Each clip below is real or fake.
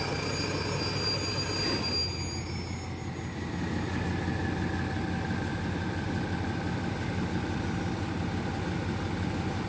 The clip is real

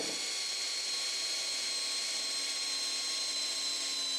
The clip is real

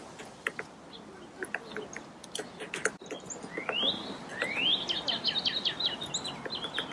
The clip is real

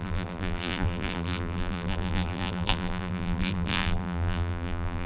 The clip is fake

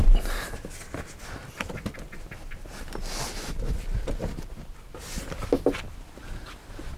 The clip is real